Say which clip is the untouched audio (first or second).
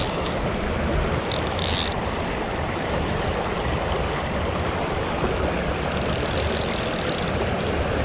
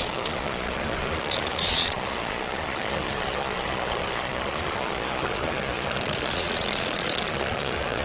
first